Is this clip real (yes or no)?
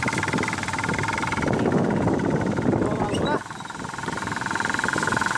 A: yes